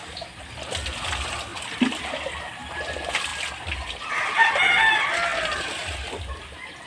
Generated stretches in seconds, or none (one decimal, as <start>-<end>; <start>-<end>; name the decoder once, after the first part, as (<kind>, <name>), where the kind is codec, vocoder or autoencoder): none